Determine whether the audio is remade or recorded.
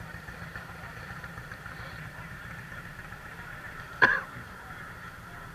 remade